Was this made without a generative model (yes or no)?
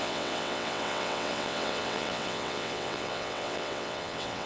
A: no